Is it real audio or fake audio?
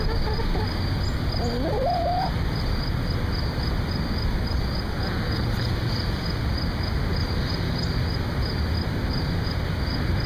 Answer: real